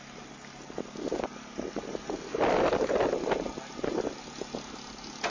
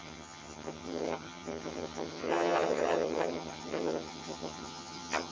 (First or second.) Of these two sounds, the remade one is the second